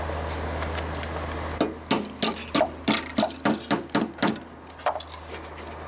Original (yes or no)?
yes